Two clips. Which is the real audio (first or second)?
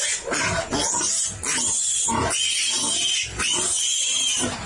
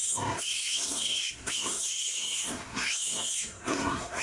first